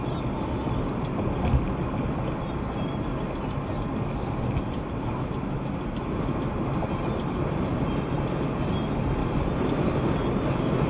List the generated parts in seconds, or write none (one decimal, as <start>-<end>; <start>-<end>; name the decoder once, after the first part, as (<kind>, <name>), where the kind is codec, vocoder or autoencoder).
none